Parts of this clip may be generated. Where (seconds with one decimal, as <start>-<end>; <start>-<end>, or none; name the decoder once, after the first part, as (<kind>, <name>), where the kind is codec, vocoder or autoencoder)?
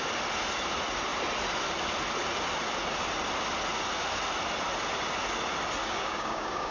5.8-6.7 (codec, DAC)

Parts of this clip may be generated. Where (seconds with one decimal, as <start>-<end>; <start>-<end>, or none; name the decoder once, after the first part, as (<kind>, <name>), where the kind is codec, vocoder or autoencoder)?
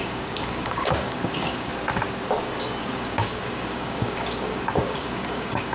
0.0-1.7 (codec, DAC); 2.8-5.7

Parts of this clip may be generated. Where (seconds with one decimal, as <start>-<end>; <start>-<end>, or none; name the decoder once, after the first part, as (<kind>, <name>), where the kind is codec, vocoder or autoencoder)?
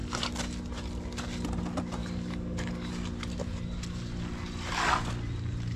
2.0-2.9 (codec, DAC)